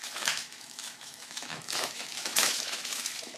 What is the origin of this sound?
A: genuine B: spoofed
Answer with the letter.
B